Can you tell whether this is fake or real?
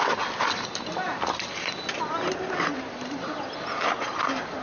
real